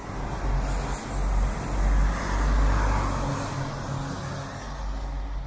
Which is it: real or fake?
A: real